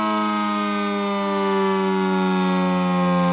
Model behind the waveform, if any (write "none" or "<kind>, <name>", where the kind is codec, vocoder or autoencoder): none